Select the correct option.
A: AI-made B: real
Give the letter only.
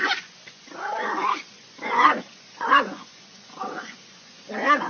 A